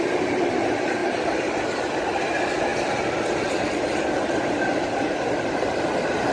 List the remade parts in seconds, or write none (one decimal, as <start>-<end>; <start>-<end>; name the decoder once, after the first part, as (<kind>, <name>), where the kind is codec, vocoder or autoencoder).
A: 1.0-2.0 (vocoder, BigVGAN v2)